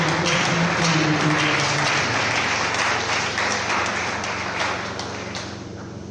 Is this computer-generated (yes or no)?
no